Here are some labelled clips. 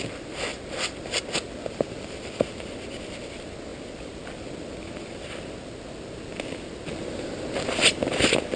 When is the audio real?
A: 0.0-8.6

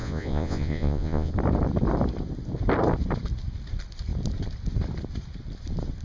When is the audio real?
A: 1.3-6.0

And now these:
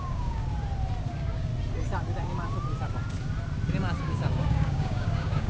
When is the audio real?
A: 0.4-1.1; 1.5-4.0

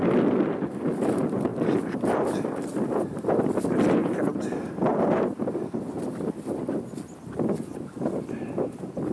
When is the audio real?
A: 0.0-1.5; 2.1-4.0; 5.4-9.1